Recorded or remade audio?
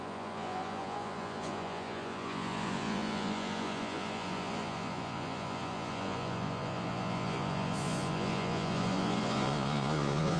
remade